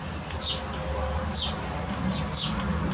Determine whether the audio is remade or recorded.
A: recorded